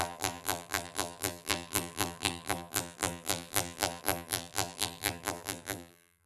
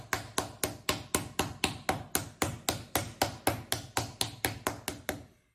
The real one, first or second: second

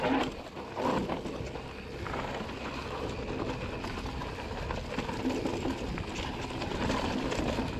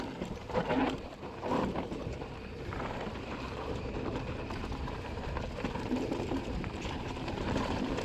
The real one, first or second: first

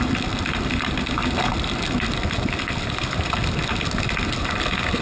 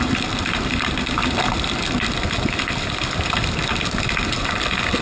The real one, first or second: first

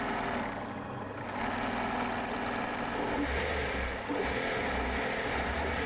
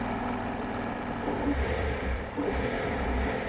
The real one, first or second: first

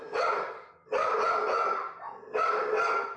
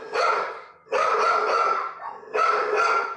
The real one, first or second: first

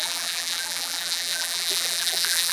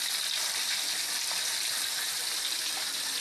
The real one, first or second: second